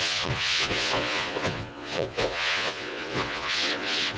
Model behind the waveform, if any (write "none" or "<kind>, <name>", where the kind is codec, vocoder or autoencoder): vocoder, Vocos